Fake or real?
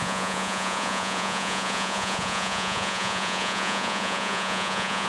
fake